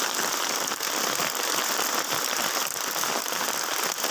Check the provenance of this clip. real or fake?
real